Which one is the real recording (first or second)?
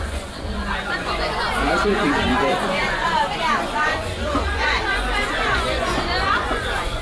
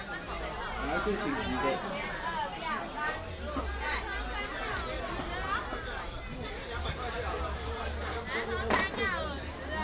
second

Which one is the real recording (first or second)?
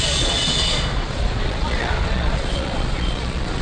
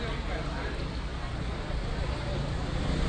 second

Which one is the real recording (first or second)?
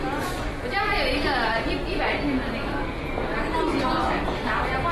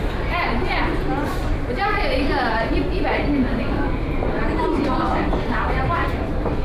first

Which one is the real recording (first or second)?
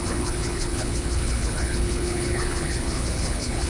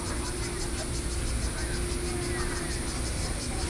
second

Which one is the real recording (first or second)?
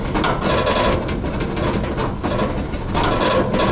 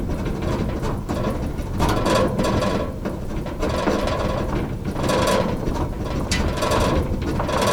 first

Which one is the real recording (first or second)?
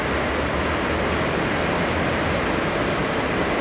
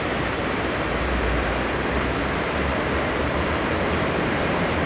first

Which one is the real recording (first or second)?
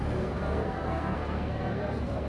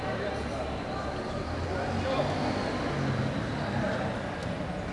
second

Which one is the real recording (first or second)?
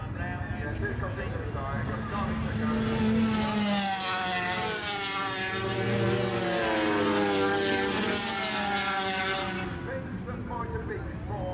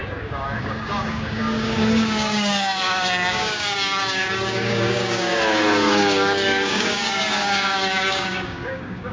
first